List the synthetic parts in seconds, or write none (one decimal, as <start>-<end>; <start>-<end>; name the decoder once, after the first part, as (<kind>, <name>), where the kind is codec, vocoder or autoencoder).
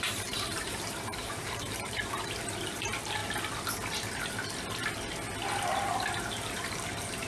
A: 0.0-3.2 (vocoder, BigVGAN v2); 6.2-7.3